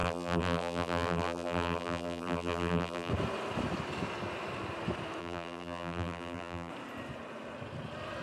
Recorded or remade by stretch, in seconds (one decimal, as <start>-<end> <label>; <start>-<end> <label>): 0.0-3.1 remade; 3.1-5.2 recorded; 5.2-6.7 remade; 6.7-8.2 recorded